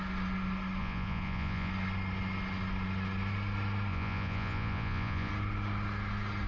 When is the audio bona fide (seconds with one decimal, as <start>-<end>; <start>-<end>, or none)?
0.0-0.8; 1.7-3.9; 5.3-6.5

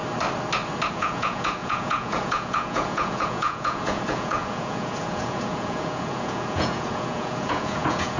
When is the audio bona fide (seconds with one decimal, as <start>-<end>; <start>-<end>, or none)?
0.0-0.9

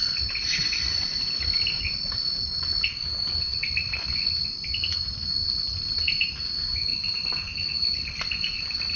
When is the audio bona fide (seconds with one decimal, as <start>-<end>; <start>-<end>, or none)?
0.0-9.0

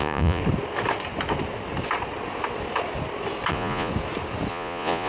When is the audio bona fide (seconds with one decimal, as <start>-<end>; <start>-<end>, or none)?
0.4-3.5; 3.9-4.5